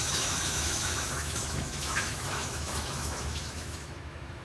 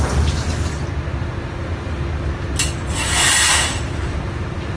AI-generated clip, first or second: first